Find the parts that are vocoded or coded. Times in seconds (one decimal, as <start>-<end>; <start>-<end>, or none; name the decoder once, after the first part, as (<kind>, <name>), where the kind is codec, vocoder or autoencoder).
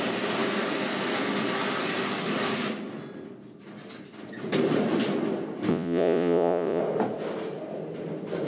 5.7-6.8 (vocoder, Vocos)